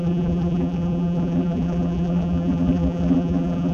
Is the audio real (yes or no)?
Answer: no